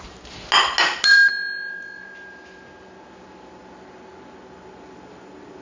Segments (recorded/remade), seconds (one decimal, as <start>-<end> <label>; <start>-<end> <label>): 0.0-5.6 recorded